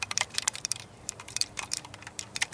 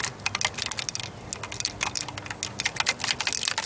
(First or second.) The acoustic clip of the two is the second